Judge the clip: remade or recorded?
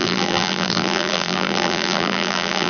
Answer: remade